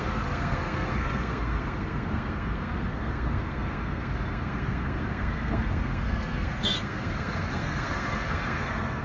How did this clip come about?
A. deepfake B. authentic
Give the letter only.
A